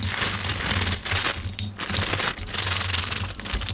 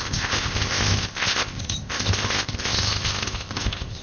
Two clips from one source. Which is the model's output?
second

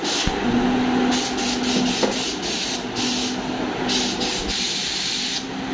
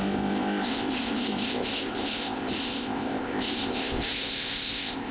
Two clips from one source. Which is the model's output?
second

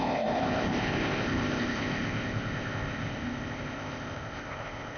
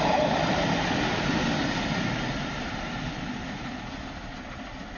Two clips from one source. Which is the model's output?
first